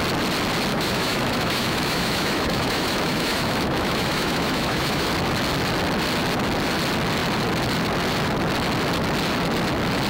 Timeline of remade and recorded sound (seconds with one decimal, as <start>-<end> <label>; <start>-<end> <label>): 0.0-0.7 recorded; 0.7-5.1 remade; 5.1-10.1 recorded